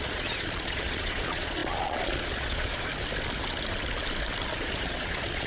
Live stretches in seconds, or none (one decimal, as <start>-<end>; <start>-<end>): 2.9-4.6